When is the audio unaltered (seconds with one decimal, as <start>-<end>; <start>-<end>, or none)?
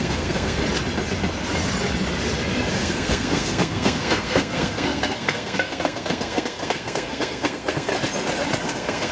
0.6-2.7; 7.9-8.6